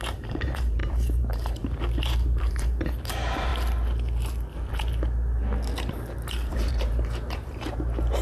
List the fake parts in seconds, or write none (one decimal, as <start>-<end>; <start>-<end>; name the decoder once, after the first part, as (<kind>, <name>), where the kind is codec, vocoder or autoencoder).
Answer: 0.0-3.5 (vocoder, BigVGAN v2); 6.5-8.2

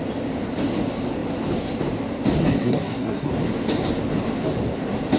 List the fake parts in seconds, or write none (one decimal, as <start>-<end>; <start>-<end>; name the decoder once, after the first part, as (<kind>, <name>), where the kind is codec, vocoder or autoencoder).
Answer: 2.4-3.3 (codec, SNAC)

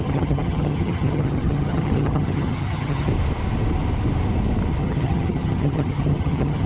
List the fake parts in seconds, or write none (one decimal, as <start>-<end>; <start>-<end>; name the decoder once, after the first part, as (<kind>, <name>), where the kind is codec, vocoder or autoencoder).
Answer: 0.0-3.1 (vocoder, HiFi-GAN); 4.8-6.7